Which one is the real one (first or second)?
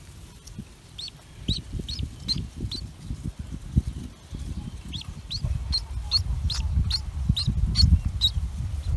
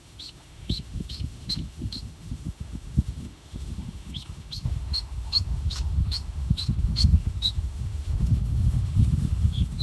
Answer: first